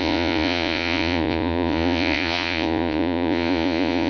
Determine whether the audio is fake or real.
fake